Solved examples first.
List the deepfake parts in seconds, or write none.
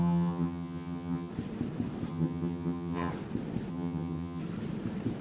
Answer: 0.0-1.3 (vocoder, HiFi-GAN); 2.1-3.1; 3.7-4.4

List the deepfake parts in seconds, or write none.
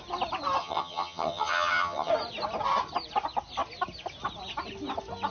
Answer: 0.6-2.1 (vocoder, HiFi-GAN)